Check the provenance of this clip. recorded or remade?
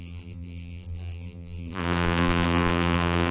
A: remade